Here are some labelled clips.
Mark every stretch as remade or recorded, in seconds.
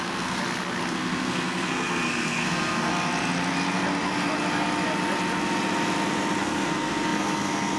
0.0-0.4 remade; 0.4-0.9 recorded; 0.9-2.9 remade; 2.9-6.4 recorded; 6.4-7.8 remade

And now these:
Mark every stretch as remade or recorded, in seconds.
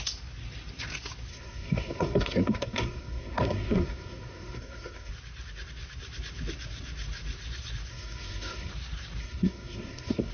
0.0-1.3 recorded; 1.3-5.1 remade; 5.1-7.9 recorded; 7.9-8.7 remade; 8.7-9.2 recorded; 9.2-10.3 remade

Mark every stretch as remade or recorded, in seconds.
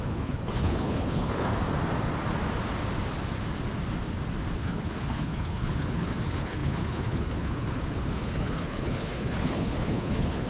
0.0-1.5 remade; 1.5-4.6 recorded; 4.6-10.5 remade